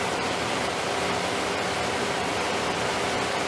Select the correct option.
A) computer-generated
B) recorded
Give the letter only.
B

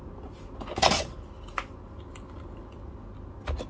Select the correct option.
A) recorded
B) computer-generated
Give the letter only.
A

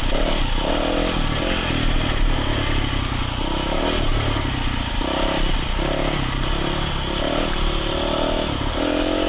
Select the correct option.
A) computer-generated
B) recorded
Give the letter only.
B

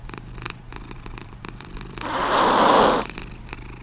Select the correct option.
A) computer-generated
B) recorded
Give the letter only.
A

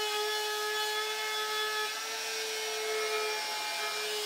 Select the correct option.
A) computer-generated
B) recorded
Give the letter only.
B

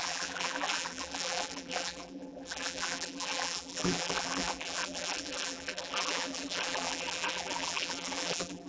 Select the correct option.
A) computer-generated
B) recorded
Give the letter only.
A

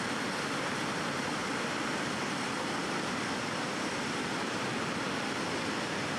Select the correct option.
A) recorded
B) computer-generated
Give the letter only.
B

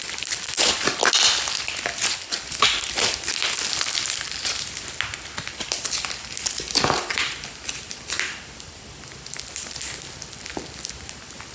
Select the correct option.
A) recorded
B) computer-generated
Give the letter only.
A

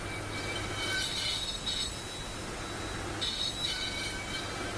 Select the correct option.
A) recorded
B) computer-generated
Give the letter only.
A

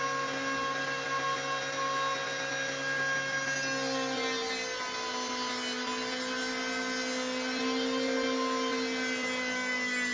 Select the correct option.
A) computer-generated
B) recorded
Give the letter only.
B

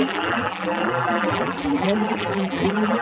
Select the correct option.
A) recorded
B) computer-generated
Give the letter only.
B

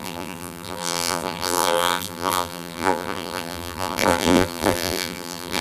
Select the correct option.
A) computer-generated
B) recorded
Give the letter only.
A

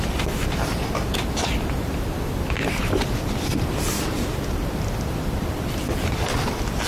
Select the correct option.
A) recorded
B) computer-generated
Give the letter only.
B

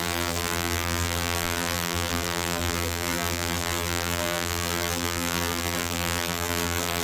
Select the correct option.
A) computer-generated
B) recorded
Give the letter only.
A